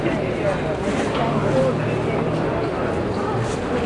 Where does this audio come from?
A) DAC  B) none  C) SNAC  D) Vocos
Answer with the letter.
B